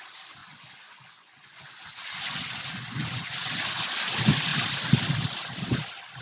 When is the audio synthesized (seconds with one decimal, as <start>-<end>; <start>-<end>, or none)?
0.4-4.1